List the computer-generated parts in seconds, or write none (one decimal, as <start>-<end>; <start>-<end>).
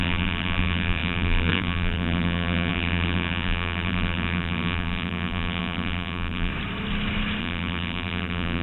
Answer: 0.0-6.5; 7.4-8.6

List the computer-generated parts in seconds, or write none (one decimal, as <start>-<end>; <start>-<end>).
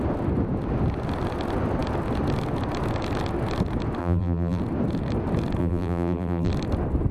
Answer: 4.0-4.6; 5.6-6.5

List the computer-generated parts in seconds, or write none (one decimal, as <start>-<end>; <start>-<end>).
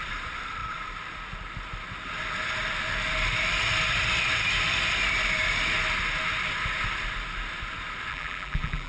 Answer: 8.1-8.9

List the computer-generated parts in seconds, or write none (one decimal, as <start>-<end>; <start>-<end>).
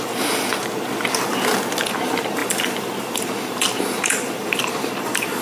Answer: 0.0-0.5; 1.8-5.4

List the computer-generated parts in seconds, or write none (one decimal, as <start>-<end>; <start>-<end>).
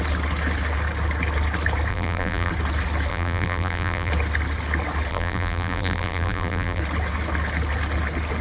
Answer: 1.9-2.5; 3.1-4.1; 5.1-6.8